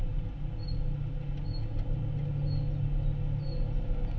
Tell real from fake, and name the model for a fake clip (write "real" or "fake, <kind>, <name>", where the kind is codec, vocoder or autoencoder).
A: real